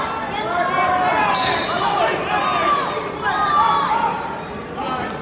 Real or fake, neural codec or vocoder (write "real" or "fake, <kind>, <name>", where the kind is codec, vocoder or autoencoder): fake, vocoder, BigVGAN v2